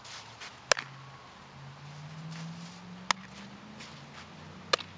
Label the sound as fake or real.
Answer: real